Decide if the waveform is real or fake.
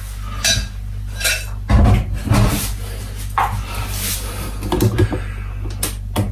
real